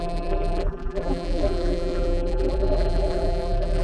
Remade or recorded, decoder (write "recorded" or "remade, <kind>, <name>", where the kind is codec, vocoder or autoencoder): remade, vocoder, BigVGAN v2